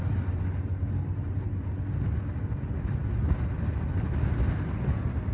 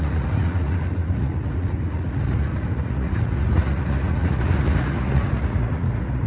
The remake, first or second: second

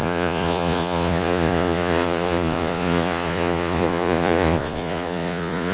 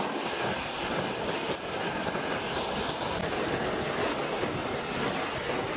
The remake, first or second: first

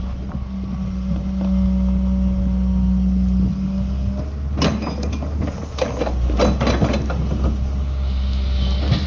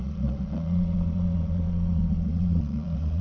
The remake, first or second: second